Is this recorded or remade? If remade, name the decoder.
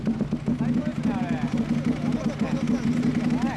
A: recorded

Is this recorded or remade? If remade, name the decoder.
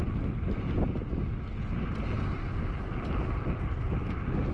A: recorded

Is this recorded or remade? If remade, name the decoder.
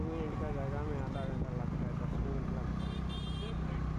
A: recorded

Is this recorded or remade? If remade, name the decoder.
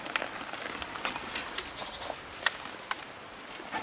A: recorded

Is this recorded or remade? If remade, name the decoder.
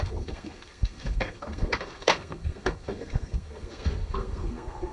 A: remade, codec, SNAC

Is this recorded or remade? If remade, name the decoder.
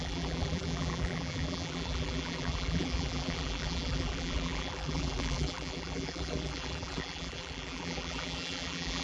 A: remade, vocoder, BigVGAN v2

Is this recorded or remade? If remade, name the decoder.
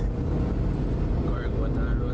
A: recorded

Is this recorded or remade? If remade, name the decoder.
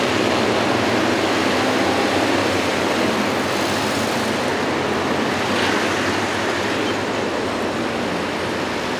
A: recorded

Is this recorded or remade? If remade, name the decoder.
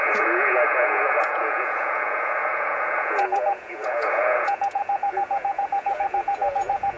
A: remade, vocoder, Vocos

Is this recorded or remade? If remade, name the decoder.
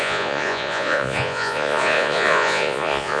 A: remade, vocoder, Vocos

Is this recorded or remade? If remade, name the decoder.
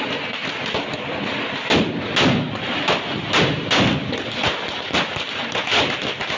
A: recorded